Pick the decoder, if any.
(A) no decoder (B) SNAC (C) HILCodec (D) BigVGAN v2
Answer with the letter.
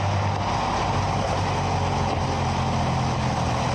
A